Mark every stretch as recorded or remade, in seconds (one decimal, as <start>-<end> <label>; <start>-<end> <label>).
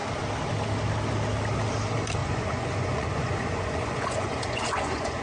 0.0-2.2 recorded; 2.2-5.2 remade